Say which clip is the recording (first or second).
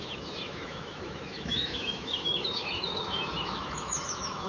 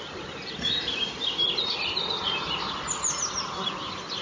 second